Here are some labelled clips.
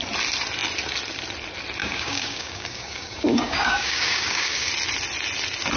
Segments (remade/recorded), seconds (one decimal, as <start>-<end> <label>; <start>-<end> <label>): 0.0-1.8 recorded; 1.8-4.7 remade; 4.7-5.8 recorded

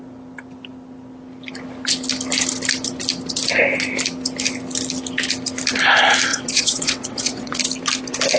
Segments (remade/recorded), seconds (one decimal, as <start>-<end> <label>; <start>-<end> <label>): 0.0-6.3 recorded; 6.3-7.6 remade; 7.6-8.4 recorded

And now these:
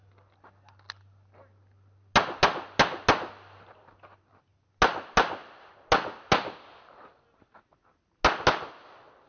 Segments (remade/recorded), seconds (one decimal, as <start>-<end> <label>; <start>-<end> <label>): 0.0-9.3 recorded

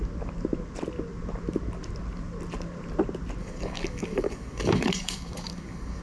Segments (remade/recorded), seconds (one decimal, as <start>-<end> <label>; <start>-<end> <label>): 0.0-3.4 recorded; 3.4-6.0 remade

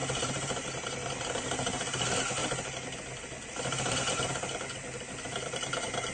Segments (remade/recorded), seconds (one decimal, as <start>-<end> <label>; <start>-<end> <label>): 0.0-1.2 remade; 1.2-6.1 recorded

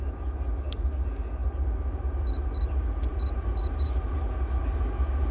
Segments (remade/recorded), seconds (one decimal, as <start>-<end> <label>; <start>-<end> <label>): 0.0-3.1 recorded; 3.1-4.4 remade; 4.4-5.3 recorded

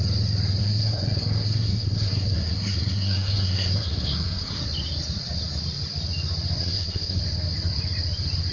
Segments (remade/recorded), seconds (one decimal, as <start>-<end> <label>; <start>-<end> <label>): 0.0-0.6 recorded; 0.6-4.6 remade; 4.6-6.6 recorded; 6.6-7.2 remade; 7.2-8.5 recorded

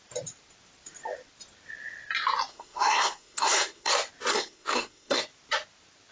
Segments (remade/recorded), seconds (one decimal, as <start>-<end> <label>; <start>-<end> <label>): 0.0-2.5 recorded; 2.5-3.9 remade; 3.9-4.3 recorded; 4.3-5.2 remade; 5.2-6.1 recorded